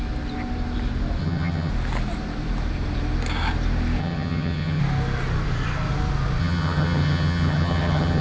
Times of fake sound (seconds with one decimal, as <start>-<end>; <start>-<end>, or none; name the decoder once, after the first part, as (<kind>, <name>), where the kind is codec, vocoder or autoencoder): 1.2-1.7 (vocoder, HiFi-GAN); 4.0-4.8; 6.4-8.2